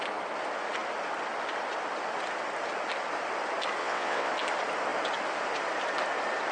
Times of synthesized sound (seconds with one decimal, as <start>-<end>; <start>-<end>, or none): 3.8-4.3